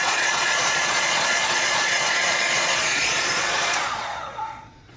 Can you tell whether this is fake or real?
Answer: fake